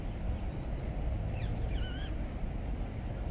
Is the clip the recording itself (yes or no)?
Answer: yes